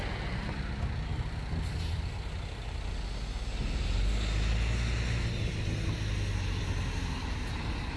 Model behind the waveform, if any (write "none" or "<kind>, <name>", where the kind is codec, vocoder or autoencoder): none